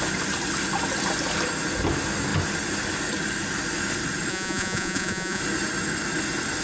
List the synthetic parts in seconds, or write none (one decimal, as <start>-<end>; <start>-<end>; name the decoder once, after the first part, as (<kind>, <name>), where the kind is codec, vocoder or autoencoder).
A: 4.3-5.4 (vocoder, Vocos)

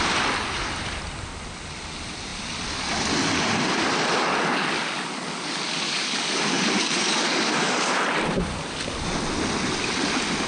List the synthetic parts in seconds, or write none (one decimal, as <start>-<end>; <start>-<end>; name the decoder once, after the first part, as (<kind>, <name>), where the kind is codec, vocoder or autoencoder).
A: 4.4-8.0 (codec, DAC)

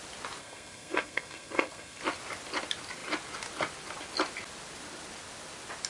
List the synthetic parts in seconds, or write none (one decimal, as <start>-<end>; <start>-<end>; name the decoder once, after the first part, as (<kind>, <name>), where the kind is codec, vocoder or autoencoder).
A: 0.4-2.0 (codec, SNAC)

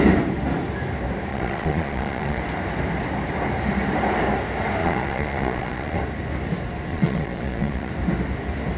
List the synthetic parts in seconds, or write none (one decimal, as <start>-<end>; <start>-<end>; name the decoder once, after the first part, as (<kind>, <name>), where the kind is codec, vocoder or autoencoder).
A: 1.3-2.4 (vocoder, Vocos); 4.8-6.0; 6.9-7.9

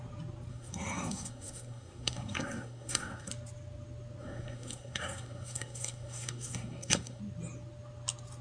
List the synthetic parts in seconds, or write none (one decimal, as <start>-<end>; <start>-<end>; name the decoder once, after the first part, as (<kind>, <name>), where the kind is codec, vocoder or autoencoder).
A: 0.5-3.3 (codec, SNAC); 4.2-7.2

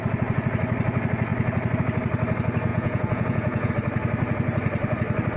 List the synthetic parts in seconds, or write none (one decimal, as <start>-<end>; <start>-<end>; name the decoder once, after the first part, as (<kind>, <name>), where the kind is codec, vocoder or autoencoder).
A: 2.7-3.7 (vocoder, Vocos)

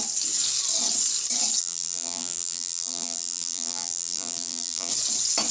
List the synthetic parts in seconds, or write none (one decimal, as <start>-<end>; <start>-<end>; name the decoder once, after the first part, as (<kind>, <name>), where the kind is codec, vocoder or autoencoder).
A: 1.6-4.9 (vocoder, BigVGAN v2)